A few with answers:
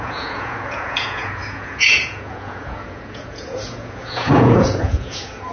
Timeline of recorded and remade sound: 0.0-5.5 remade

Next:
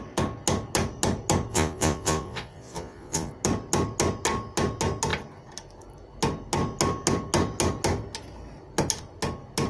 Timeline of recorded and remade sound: 0.0-1.5 recorded; 1.5-3.3 remade; 3.3-9.7 recorded